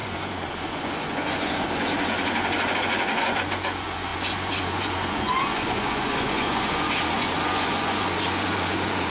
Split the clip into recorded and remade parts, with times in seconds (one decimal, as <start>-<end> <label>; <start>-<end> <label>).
0.0-9.1 remade